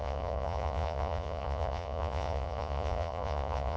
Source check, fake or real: fake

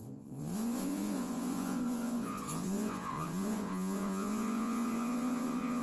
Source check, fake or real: fake